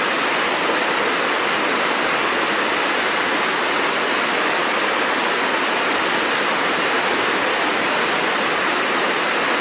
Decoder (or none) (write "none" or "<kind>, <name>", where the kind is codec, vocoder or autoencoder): none